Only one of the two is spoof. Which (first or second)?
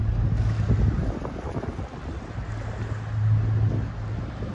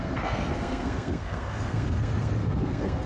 second